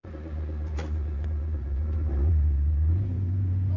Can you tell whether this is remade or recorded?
remade